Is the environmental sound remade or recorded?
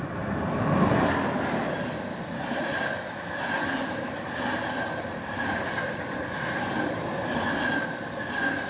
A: recorded